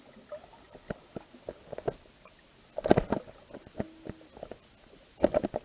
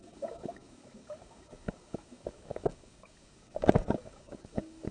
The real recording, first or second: first